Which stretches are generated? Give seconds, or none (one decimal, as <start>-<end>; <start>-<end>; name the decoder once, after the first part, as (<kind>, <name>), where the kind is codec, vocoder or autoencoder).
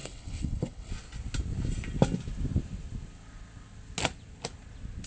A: 0.0-0.9 (codec, HILCodec)